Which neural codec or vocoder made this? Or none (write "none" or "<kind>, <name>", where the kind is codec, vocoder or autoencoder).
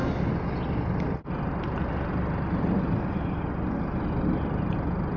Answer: none